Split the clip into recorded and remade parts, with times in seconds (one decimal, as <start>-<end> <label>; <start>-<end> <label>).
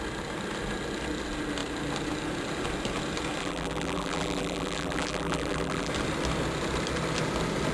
0.0-3.4 recorded; 3.4-5.9 remade; 5.9-7.7 recorded